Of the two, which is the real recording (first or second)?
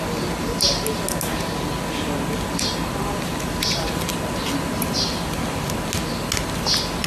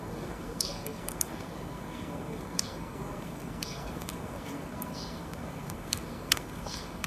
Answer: first